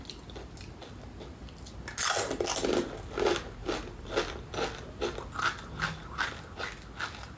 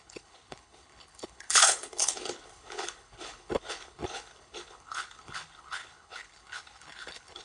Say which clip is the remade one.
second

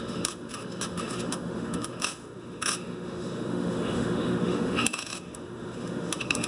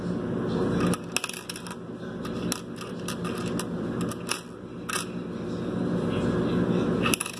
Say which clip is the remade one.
first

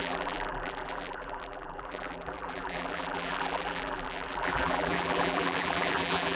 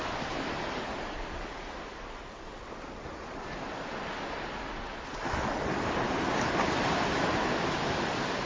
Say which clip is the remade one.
first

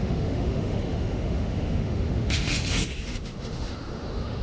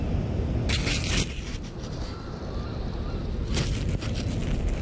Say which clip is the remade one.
first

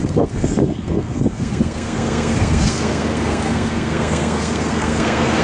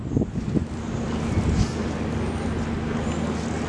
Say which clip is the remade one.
first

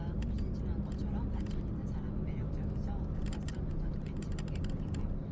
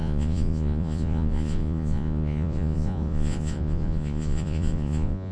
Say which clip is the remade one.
second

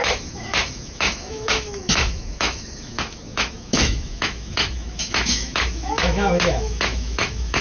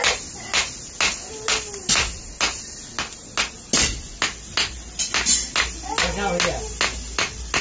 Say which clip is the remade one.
first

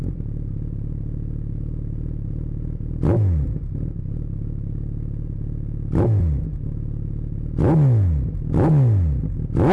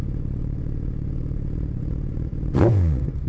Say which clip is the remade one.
second